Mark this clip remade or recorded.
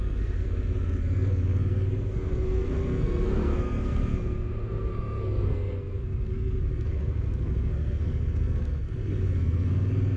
remade